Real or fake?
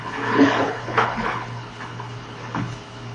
fake